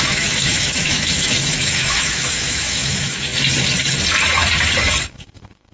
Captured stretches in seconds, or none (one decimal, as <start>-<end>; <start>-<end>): 3.3-5.0